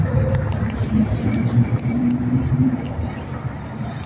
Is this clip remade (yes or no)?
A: yes